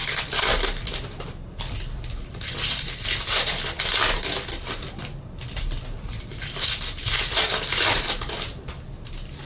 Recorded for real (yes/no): no